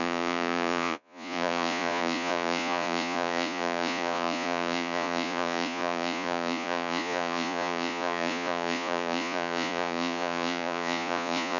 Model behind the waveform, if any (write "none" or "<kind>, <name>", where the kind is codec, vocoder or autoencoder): vocoder, Vocos